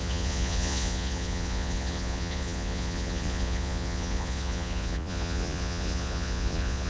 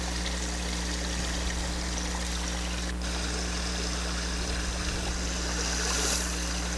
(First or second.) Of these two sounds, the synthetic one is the first